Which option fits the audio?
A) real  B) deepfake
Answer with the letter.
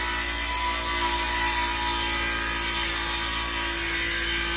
A